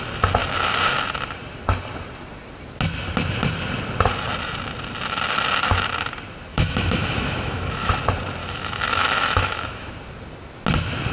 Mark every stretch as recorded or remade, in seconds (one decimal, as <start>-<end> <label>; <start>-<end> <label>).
0.0-6.5 recorded; 6.5-7.9 remade; 7.9-8.4 recorded; 8.4-9.9 remade; 9.9-11.1 recorded